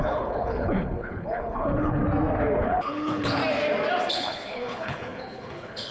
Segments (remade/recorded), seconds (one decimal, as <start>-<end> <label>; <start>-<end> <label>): 0.0-2.0 remade; 2.0-2.6 recorded; 2.6-3.4 remade; 3.4-4.1 recorded; 4.1-5.9 remade